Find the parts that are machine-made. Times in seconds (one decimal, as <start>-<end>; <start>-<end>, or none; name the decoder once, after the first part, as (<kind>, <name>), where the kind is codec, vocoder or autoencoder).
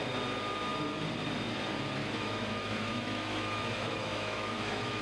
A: 2.0-5.0 (autoencoder, DAC-VAE)